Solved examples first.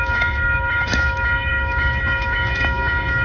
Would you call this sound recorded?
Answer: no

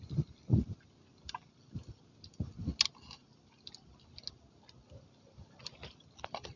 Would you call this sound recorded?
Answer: yes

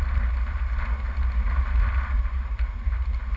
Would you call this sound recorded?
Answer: yes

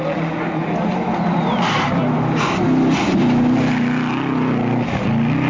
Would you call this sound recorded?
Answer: yes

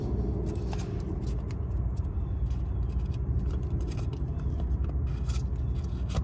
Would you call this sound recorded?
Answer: yes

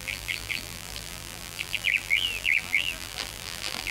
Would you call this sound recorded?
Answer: no